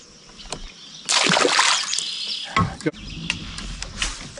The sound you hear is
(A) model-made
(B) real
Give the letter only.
B